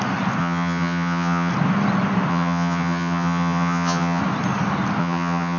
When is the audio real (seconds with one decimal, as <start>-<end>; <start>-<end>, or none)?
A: 0.0-0.4; 1.5-2.3; 4.2-5.0